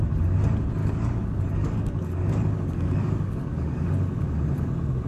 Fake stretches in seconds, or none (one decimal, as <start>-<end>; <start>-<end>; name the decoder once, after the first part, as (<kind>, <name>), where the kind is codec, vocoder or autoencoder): 0.8-3.9 (codec, DAC)